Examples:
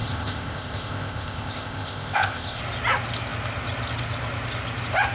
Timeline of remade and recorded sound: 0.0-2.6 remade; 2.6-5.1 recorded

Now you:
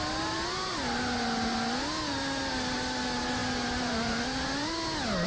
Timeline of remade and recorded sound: 0.0-5.3 recorded

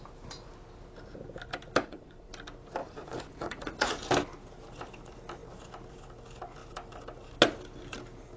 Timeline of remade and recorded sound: 0.0-1.8 recorded; 1.8-2.3 remade; 2.3-2.8 recorded; 2.8-4.0 remade; 4.0-8.4 recorded

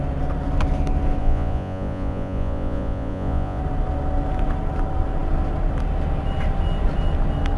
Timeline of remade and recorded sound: 0.0-1.2 recorded; 1.2-3.6 remade; 3.6-7.6 recorded